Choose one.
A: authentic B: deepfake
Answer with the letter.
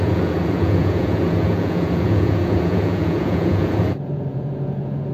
B